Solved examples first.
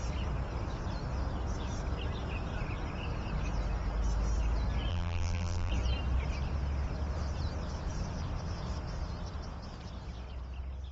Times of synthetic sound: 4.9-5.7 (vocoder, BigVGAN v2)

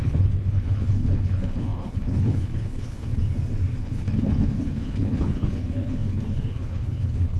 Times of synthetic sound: 0.0-3.2 (codec, HILCodec); 3.8-7.4